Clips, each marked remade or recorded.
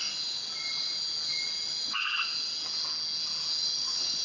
recorded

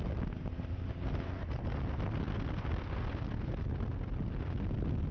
recorded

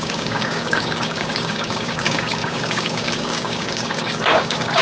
remade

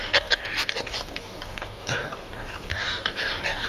remade